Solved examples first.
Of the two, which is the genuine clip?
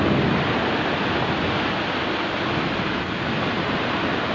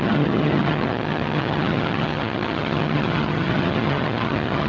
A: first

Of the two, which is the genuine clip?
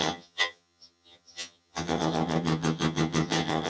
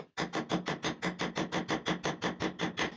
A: second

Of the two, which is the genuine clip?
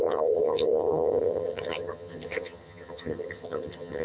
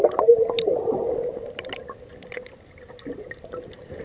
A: second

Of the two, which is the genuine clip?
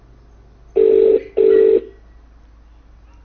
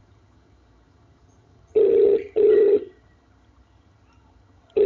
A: first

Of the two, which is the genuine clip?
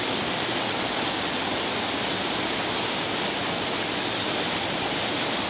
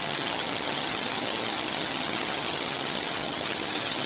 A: first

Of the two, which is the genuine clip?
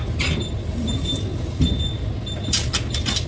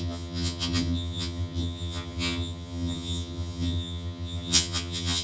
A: first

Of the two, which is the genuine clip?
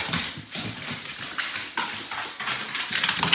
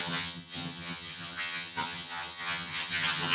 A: first